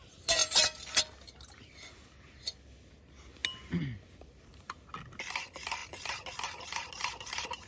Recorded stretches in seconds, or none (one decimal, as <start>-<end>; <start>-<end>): 0.0-7.7